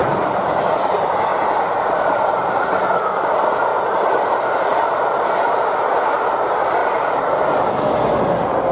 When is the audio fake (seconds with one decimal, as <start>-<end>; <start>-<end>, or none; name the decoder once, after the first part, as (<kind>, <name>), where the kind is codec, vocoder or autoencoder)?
3.7-5.2 (vocoder, BigVGAN v2); 6.8-7.3